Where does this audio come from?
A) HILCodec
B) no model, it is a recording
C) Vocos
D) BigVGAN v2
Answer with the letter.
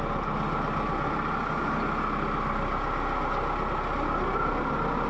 B